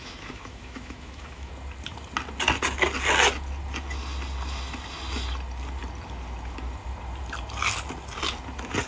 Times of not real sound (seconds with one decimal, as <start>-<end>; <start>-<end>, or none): 0.0-1.5